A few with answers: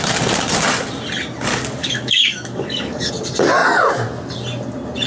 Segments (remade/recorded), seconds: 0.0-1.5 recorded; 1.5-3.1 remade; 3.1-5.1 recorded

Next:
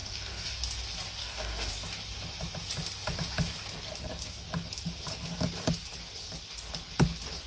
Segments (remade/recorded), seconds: 0.0-0.6 remade; 0.6-1.2 recorded; 1.2-1.7 remade; 1.7-7.5 recorded

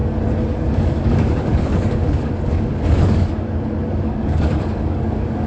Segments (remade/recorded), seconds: 0.0-0.7 recorded; 0.7-5.5 remade